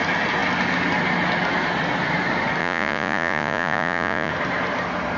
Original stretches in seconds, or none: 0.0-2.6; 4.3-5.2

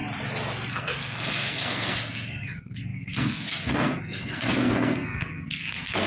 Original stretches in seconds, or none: 0.0-0.7

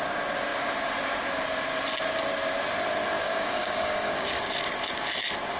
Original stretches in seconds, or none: 0.0-3.2; 4.4-5.6

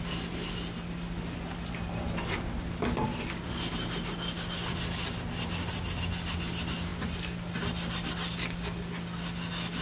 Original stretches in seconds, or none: 0.0-9.8

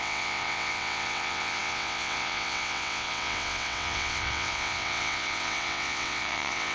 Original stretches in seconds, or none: none

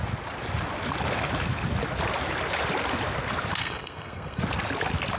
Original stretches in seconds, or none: 0.0-3.6; 4.4-5.2

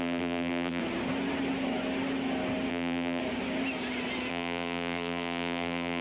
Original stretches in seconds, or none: 0.8-2.7; 3.2-4.3